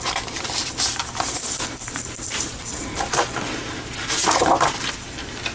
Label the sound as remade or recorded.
remade